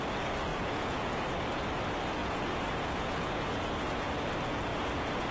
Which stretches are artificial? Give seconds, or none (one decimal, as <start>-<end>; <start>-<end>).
0.5-1.2; 2.2-4.1; 4.7-5.3